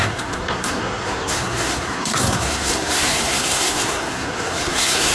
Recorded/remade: remade